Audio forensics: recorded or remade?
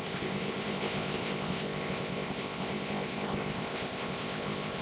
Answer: remade